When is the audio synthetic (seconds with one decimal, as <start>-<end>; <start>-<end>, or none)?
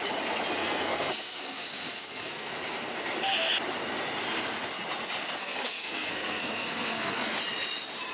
0.6-2.5; 5.4-7.3